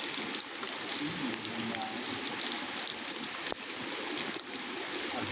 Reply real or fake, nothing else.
real